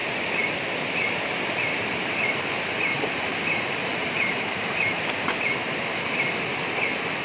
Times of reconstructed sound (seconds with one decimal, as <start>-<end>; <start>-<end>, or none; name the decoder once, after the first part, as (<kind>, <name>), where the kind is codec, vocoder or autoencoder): 3.8-5.0 (vocoder, BigVGAN v2)